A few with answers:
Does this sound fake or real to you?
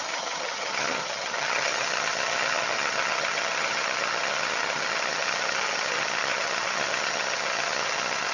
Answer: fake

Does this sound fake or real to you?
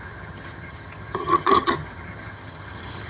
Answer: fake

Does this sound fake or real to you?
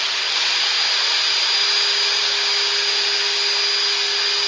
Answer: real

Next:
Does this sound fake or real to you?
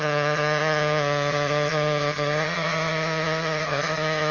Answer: fake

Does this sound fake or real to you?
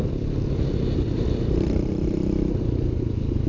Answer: real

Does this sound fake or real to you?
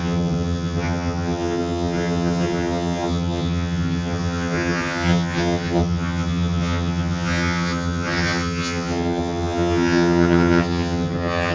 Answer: fake